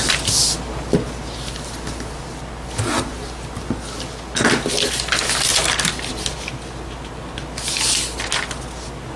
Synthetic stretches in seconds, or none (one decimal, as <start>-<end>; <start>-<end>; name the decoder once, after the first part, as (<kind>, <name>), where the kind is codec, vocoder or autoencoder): none